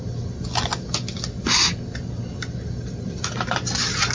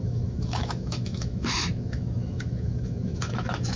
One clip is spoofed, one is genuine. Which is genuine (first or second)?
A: first